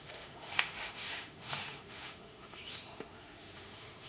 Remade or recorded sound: remade